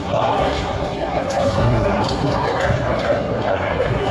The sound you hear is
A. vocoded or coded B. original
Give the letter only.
A